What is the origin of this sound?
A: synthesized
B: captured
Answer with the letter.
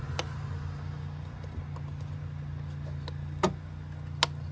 B